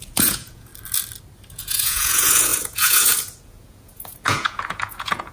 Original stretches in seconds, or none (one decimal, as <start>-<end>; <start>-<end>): 0.7-1.5

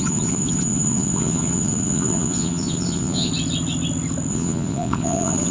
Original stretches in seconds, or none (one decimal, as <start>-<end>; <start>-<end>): 3.3-4.3

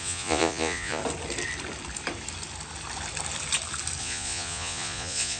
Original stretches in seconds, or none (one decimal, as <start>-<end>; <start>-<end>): 1.0-4.0

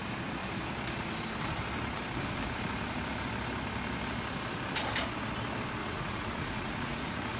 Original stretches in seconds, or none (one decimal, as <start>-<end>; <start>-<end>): 0.0-5.8